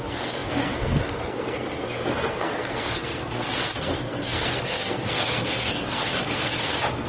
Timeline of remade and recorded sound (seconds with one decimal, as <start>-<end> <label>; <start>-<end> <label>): 0.0-7.1 remade